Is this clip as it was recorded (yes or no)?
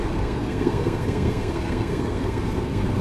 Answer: no